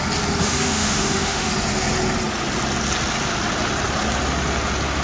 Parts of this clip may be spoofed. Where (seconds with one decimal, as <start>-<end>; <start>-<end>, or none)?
0.4-1.5